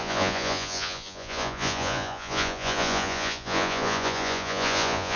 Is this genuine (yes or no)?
no